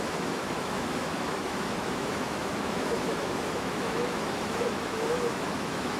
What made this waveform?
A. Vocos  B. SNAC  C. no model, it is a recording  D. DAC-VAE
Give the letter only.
D